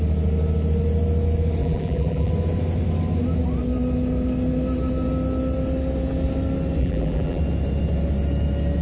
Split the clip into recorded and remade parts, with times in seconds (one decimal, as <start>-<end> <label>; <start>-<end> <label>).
0.0-1.6 recorded; 1.6-2.3 remade; 2.3-6.8 recorded; 6.8-7.4 remade; 7.4-8.8 recorded